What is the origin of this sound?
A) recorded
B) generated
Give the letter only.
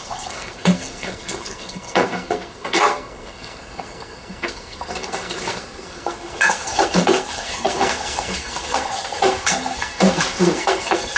B